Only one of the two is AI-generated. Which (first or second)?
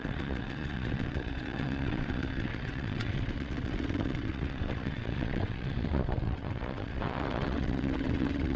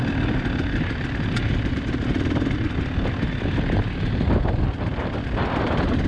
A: first